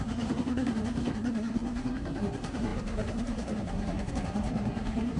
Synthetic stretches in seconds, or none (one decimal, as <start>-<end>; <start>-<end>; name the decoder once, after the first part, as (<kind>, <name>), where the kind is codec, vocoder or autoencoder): 0.0-5.2 (codec, SNAC)